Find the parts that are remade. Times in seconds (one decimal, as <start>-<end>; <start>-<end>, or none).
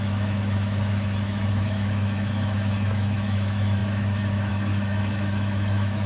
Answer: 0.0-6.1